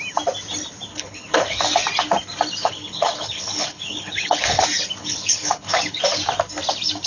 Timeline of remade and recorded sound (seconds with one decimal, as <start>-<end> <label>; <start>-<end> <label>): 0.0-0.9 recorded; 0.9-1.6 remade; 1.6-2.6 recorded; 2.6-4.6 remade; 4.6-5.0 recorded; 5.0-6.0 remade; 6.0-7.1 recorded